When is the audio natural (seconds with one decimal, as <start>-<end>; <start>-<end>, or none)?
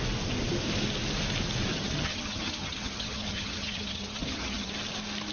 0.0-1.7; 4.7-5.3